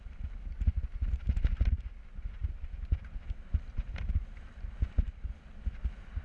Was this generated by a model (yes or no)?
no